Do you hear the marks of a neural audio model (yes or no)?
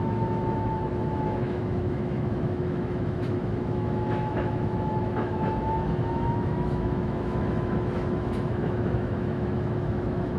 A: yes